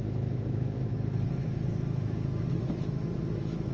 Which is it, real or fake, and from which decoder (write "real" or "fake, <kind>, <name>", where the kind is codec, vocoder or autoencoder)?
fake, autoencoder, DAC-VAE